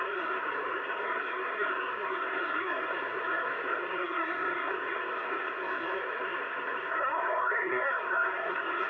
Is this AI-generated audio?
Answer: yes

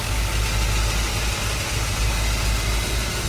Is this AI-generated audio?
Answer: no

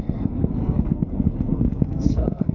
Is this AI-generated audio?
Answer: yes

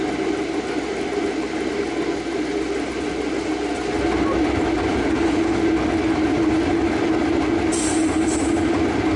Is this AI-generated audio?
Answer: no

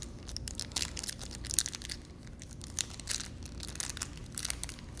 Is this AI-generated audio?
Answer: no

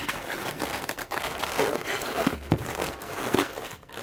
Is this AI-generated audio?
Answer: yes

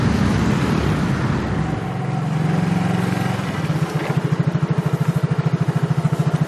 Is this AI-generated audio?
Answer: no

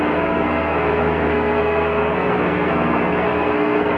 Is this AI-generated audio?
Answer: yes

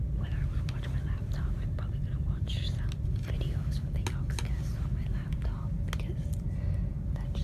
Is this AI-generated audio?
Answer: no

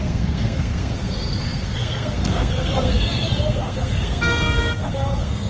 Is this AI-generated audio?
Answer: yes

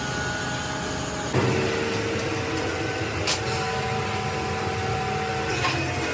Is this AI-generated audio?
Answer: no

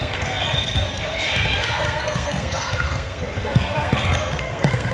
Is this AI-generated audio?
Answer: yes